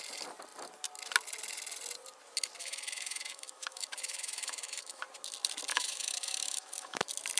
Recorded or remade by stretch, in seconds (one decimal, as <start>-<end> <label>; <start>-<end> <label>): 0.0-2.6 recorded; 2.6-5.0 remade; 5.0-5.7 recorded; 5.7-7.0 remade; 7.0-7.4 recorded

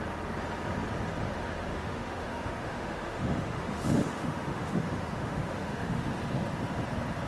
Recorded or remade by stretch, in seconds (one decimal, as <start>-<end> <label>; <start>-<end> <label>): 0.0-1.7 recorded; 1.7-6.1 remade; 6.1-7.3 recorded

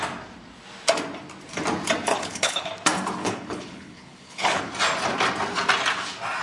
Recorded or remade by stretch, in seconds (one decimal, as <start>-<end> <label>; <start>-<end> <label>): 0.0-2.1 recorded; 2.1-2.7 remade; 2.7-3.2 recorded; 3.2-4.7 remade; 4.7-6.4 recorded